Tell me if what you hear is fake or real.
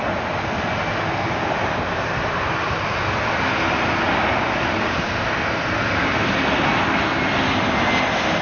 real